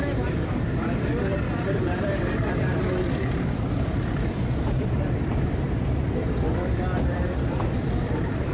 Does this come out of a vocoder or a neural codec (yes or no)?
yes